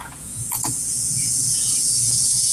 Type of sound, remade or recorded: remade